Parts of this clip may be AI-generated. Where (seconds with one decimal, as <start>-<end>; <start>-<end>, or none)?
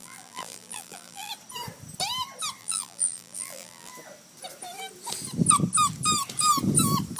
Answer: 0.0-1.3; 2.6-3.9